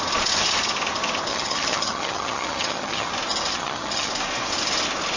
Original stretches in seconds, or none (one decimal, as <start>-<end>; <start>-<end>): 0.0-1.3; 3.1-3.5; 4.1-5.2